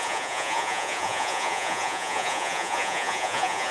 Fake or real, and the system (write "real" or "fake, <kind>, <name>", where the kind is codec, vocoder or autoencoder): fake, vocoder, Vocos